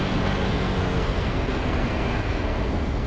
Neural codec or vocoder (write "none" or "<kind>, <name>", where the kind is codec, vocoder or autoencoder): codec, SNAC